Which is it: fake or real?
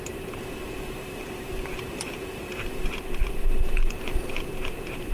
fake